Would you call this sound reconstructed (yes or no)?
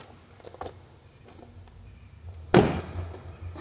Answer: no